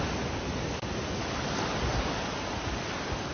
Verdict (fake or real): real